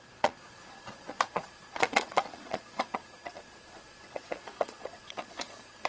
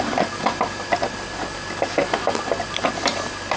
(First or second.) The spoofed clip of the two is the first